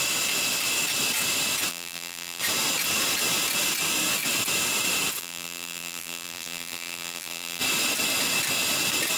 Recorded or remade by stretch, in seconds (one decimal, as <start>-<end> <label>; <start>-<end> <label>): 0.0-1.7 recorded; 1.7-2.4 remade; 2.4-5.2 recorded; 5.2-7.6 remade; 7.6-9.2 recorded